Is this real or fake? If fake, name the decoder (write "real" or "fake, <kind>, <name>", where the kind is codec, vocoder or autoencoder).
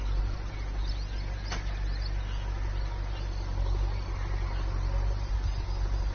real